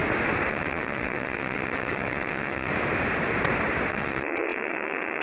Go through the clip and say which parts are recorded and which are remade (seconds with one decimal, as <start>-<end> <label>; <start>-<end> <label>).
0.0-0.5 recorded; 0.5-2.7 remade; 2.7-3.9 recorded; 3.9-5.2 remade